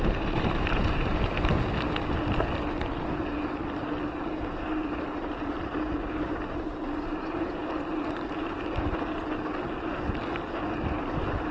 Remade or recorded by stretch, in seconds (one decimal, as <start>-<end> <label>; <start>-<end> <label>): 0.0-1.1 remade; 1.1-4.3 recorded; 4.3-7.6 remade; 7.6-11.0 recorded; 11.0-11.5 remade

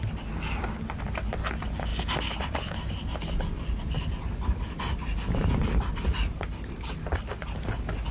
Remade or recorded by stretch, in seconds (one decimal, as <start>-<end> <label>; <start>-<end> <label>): 0.0-8.1 recorded

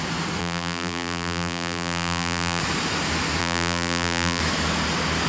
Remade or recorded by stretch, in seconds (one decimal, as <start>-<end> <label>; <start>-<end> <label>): 0.0-0.4 recorded; 0.4-2.6 remade; 2.6-3.4 recorded; 3.4-4.4 remade; 4.4-5.3 recorded